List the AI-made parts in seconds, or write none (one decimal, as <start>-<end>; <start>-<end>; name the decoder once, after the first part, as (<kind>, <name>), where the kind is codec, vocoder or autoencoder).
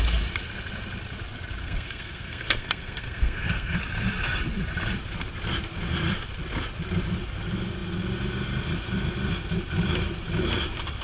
1.6-3.8 (codec, SNAC)